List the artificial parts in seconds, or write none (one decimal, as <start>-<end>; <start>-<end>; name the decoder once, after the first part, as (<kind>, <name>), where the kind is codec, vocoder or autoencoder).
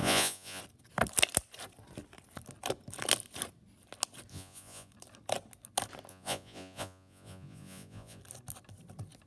0.0-0.6 (vocoder, Vocos); 4.3-4.9; 6.1-8.2